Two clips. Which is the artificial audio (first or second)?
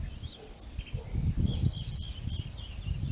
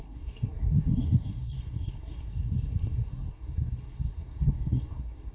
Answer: second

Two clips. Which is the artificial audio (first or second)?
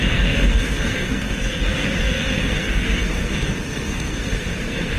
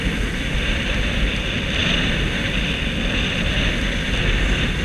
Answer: first